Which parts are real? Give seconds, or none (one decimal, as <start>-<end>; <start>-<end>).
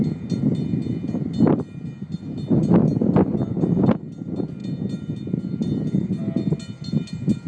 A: 0.0-7.5